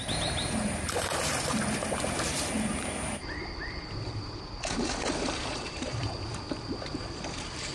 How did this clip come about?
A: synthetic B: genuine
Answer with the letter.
A